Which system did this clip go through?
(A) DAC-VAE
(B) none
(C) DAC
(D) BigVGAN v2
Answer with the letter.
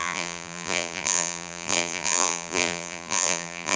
D